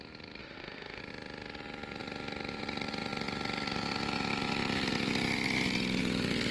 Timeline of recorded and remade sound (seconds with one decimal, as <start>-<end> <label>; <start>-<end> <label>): 0.0-0.4 recorded; 0.4-1.0 remade; 1.0-6.5 recorded